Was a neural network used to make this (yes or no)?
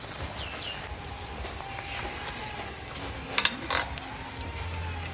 no